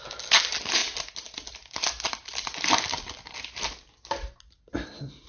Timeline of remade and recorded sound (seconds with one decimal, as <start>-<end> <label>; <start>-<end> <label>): 0.0-5.3 recorded